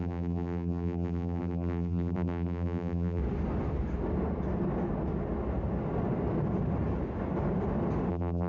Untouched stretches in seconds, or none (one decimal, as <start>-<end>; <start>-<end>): 3.2-8.1